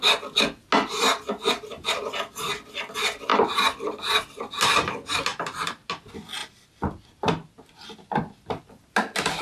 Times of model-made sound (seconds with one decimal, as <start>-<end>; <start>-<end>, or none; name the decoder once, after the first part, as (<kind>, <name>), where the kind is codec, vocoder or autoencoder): 5.3-5.9 (vocoder, BigVGAN v2)